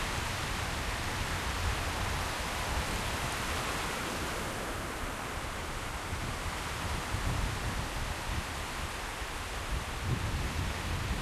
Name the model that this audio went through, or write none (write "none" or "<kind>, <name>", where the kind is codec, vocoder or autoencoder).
none